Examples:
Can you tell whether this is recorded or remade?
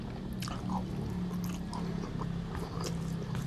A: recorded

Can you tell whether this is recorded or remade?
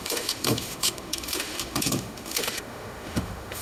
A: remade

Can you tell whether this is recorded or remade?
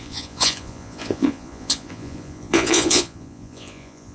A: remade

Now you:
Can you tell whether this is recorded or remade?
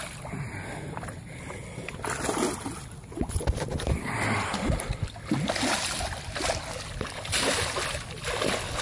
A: recorded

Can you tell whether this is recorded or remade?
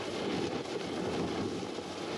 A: remade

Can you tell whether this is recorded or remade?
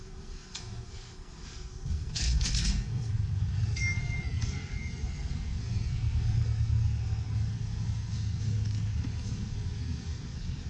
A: remade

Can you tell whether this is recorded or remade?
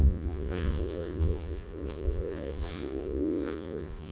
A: remade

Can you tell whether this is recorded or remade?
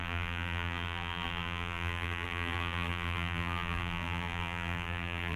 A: remade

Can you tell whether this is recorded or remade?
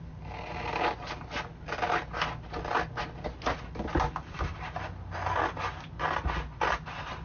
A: recorded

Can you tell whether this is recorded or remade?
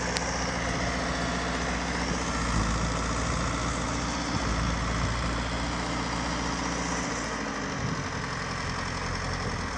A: recorded